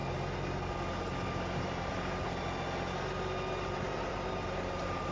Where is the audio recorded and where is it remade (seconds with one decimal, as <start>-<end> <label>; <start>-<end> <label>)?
0.0-1.6 recorded; 1.6-2.4 remade; 2.4-3.6 recorded; 3.6-5.1 remade